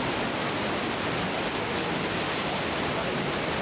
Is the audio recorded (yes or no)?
yes